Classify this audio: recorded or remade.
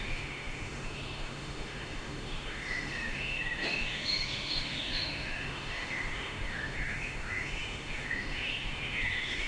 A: remade